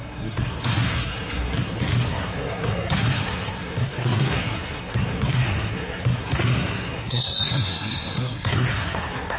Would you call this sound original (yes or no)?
no